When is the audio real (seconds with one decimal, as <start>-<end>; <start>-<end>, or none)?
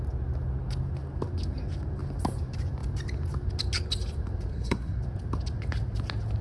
0.0-4.5; 5.0-6.4